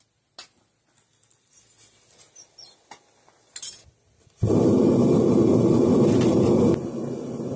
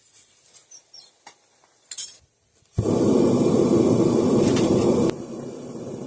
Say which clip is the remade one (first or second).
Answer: second